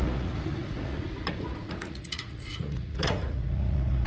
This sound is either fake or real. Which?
fake